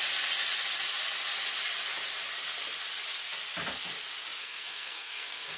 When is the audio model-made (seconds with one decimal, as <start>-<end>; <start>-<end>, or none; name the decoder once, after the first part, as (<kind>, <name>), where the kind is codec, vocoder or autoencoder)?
4.4-5.6 (codec, SNAC)